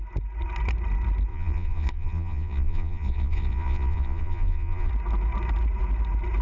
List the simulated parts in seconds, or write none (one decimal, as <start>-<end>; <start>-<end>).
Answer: 1.3-4.9